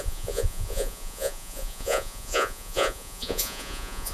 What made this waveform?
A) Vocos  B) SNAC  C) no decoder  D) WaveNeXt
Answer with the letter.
A